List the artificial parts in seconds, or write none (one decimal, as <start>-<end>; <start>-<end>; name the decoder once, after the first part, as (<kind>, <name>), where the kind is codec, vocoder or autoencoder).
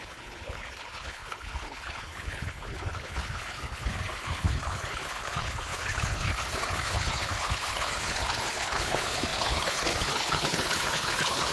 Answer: 0.0-11.5 (codec, HILCodec)